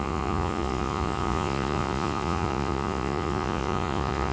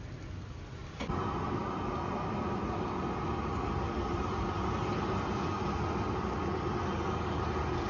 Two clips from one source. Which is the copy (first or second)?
first